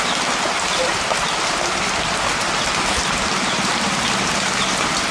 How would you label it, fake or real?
real